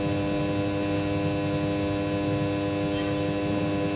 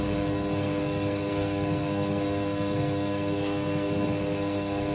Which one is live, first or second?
first